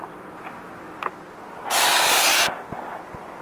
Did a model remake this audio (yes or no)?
no